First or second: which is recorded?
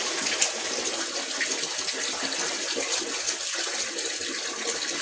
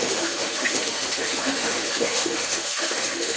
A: first